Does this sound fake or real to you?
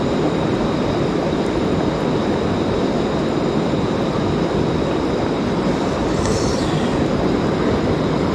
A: real